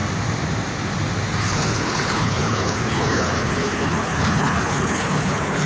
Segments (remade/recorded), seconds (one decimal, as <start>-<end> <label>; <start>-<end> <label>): 0.0-1.4 recorded; 1.4-5.7 remade